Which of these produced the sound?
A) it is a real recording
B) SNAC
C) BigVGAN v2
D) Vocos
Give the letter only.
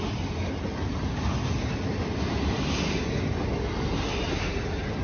A